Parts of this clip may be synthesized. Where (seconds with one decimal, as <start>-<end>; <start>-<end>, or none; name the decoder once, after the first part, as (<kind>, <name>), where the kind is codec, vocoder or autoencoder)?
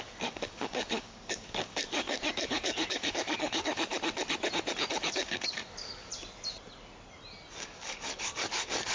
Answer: 0.0-3.9 (codec, DAC); 5.0-6.1; 7.6-8.9